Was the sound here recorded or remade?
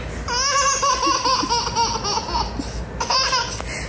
recorded